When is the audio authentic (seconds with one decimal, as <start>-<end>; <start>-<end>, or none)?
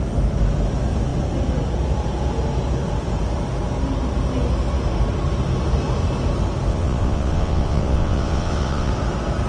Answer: 0.0-6.7; 8.9-9.5